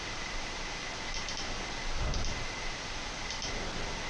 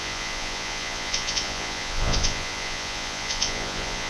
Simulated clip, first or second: second